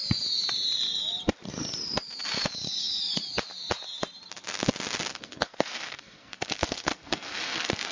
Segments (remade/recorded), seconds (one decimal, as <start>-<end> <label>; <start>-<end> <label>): 0.0-5.1 recorded; 5.1-7.9 remade